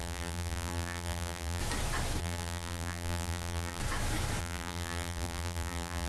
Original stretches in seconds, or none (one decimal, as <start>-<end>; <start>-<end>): 1.6-2.2; 3.8-4.4